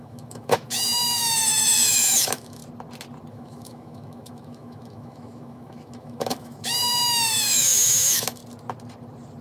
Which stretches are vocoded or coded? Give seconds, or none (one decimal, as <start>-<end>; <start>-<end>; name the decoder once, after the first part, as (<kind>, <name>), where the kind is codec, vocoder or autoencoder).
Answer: 0.0-2.6 (autoencoder, DAC-VAE); 3.3-8.4